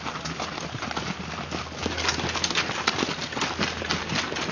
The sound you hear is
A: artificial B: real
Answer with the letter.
B